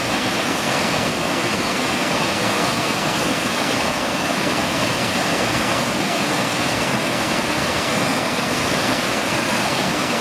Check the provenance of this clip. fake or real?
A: fake